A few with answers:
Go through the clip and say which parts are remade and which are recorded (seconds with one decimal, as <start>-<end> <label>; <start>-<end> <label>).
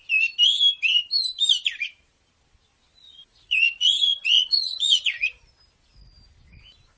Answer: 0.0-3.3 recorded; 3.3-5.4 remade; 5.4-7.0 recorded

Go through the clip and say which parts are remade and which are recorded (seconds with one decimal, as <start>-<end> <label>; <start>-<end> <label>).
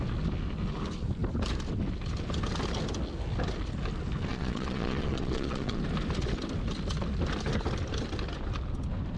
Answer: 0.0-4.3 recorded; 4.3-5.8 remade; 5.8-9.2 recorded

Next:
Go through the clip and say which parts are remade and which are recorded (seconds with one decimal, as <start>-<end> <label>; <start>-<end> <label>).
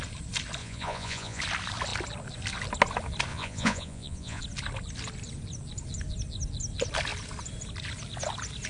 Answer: 0.0-0.6 recorded; 0.6-1.4 remade; 1.4-3.3 recorded; 3.3-4.4 remade; 4.4-8.7 recorded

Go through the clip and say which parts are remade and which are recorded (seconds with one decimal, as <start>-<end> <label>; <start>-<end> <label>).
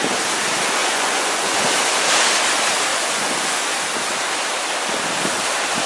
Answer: 0.0-0.8 recorded; 0.8-1.6 remade; 1.6-2.9 recorded; 2.9-3.8 remade; 3.8-5.9 recorded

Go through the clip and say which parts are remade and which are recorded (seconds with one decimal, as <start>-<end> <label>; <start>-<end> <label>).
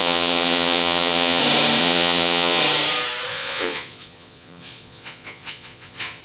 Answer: 0.0-1.4 remade; 1.4-1.8 recorded; 1.8-2.6 remade; 2.6-3.3 recorded; 3.3-6.2 remade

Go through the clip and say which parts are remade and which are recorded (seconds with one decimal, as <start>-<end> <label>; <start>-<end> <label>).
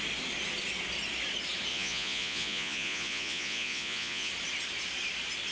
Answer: 0.0-1.7 recorded; 1.7-4.3 remade; 4.3-5.5 recorded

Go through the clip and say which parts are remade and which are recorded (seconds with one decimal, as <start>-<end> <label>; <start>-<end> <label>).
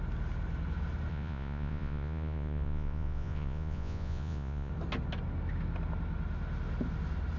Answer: 0.0-1.1 recorded; 1.1-4.7 remade; 4.7-7.4 recorded